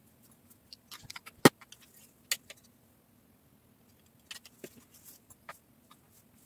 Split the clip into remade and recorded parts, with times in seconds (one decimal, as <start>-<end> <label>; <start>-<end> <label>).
0.0-6.5 recorded